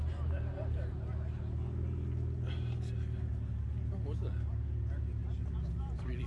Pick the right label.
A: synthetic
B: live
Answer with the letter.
B